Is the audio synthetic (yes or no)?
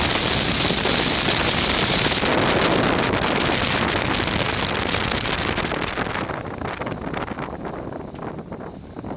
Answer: no